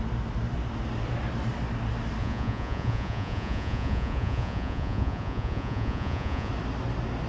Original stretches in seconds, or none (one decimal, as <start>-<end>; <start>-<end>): 0.0-2.2; 6.5-7.3